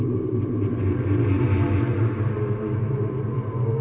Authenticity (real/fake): fake